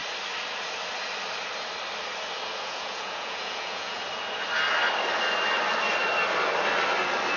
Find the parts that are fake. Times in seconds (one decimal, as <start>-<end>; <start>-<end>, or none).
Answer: 2.5-4.0

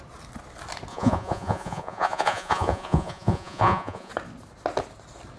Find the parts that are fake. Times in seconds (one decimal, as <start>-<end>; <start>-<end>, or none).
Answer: 0.9-4.1

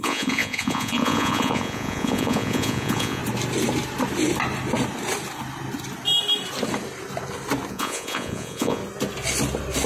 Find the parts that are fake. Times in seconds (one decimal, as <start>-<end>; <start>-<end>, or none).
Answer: 0.0-3.2; 7.7-8.8

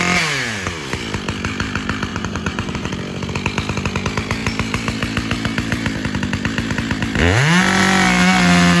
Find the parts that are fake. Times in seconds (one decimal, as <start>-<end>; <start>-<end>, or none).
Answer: 2.1-2.9